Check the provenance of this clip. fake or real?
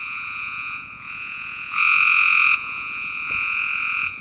fake